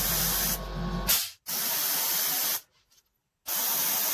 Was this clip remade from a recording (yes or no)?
no